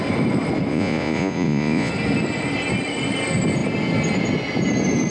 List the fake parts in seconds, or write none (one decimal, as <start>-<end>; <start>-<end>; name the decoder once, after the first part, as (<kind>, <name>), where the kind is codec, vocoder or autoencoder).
0.7-1.9 (vocoder, Vocos)